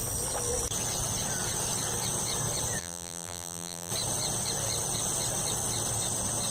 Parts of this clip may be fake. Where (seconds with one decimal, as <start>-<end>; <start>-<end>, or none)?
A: 2.8-3.9